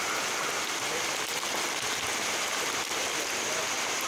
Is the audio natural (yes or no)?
yes